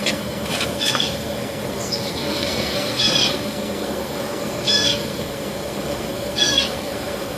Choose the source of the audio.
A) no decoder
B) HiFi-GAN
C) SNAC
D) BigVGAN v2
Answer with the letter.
C